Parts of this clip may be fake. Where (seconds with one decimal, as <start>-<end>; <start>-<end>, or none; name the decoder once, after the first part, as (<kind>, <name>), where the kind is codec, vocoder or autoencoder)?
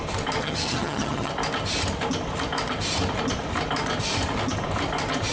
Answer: 0.4-1.3 (vocoder, HiFi-GAN)